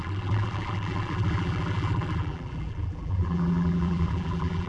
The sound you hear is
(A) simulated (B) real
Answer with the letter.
A